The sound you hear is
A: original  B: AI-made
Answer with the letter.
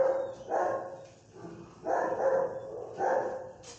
A